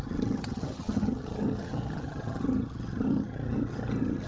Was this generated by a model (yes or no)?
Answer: yes